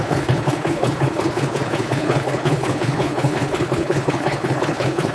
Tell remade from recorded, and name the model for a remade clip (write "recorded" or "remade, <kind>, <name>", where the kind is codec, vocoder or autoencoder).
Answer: remade, codec, HILCodec